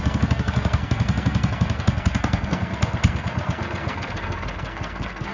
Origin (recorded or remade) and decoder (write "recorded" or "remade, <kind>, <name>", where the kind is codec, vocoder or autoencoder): remade, codec, SNAC